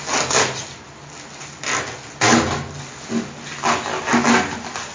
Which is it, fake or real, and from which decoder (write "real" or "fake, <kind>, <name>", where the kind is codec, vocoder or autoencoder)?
real